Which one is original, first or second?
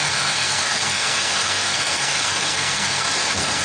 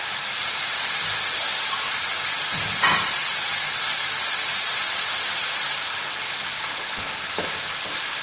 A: second